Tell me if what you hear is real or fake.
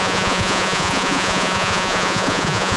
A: fake